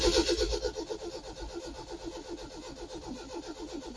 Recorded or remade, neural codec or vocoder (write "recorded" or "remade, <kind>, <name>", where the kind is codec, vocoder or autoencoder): recorded